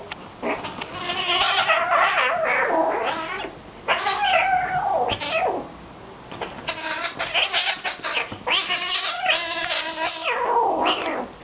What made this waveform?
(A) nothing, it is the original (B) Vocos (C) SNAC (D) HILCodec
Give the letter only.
A